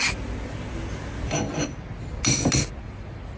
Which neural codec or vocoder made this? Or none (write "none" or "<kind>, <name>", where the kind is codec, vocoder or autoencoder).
none